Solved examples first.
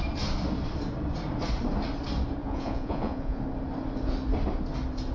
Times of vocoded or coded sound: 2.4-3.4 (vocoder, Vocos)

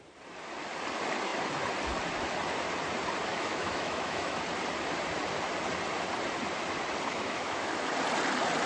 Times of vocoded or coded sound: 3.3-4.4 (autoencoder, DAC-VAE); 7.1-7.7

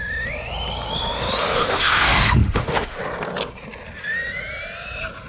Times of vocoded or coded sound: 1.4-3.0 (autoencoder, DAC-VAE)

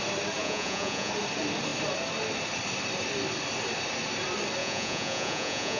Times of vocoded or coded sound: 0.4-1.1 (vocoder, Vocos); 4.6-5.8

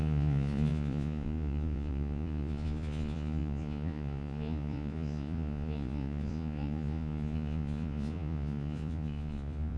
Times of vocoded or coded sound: 0.0-9.8 (vocoder, Vocos)

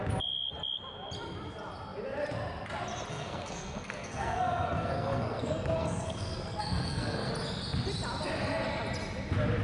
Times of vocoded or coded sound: 3.1-7.3 (codec, SNAC)